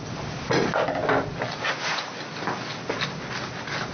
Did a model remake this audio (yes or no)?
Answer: no